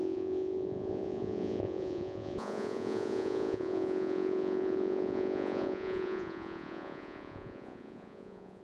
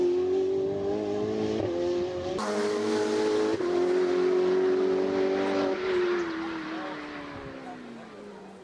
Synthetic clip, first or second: first